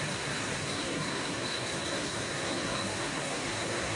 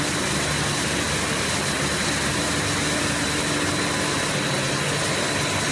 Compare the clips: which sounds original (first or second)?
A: second